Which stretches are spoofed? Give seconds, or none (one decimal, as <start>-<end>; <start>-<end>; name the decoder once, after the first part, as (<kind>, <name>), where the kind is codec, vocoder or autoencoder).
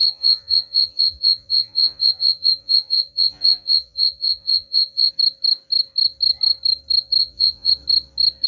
0.0-5.1 (vocoder, Vocos); 7.2-7.7